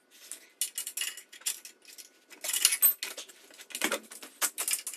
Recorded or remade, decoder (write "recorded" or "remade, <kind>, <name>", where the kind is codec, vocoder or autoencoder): recorded